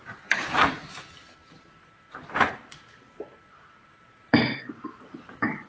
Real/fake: fake